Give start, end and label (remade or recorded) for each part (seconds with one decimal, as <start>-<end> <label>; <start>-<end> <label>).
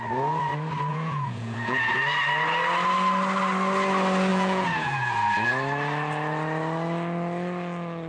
0.0-0.9 recorded; 0.9-2.0 remade; 2.0-4.3 recorded; 4.3-5.5 remade; 5.5-8.1 recorded